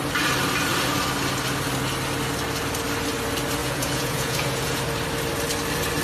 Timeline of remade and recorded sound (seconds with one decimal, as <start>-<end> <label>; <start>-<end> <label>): 0.0-3.6 recorded; 3.6-4.8 remade; 4.8-6.0 recorded